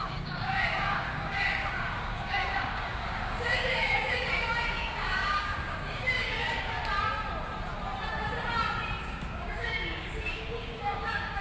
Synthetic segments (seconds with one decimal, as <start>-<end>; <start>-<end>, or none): 0.0-6.8; 9.0-11.4